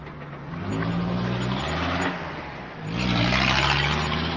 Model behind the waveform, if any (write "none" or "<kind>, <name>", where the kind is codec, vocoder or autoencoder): none